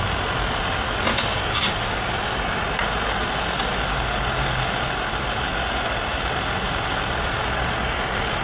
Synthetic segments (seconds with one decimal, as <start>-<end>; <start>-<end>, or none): 1.1-2.1